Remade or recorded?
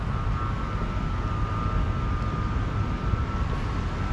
recorded